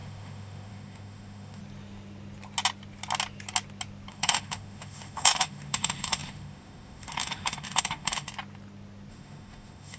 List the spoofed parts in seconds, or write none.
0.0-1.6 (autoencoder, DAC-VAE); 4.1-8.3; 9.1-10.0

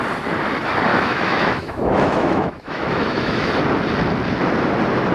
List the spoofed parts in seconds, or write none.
0.9-3.5 (autoencoder, DAC-VAE)